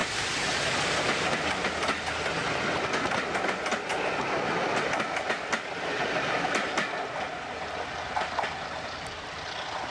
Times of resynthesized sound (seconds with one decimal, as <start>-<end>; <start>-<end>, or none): none